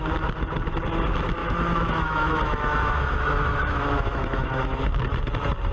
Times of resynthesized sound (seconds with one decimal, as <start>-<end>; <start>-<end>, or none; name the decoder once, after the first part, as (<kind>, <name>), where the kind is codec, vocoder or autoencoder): 1.4-4.8 (autoencoder, DAC-VAE)